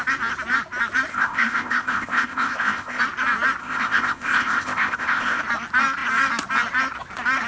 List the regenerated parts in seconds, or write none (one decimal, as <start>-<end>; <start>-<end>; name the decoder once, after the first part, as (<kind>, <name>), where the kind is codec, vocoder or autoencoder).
1.1-3.0 (codec, ZipCodec); 3.6-5.4